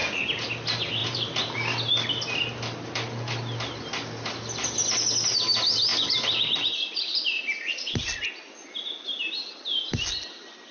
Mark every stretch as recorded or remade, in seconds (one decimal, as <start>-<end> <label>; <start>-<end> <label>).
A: 0.0-10.7 recorded